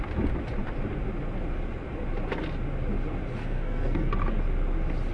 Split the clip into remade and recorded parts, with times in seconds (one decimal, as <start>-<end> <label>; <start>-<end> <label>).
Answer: 0.0-3.4 recorded; 3.4-4.1 remade; 4.1-5.1 recorded